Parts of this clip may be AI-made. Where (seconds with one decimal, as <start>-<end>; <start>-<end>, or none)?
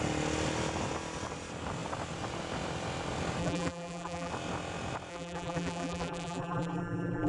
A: 3.4-4.3; 5.1-7.3